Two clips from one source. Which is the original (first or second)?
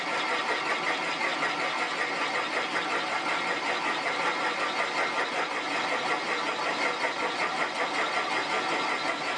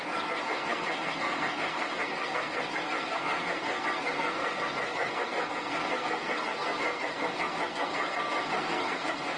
first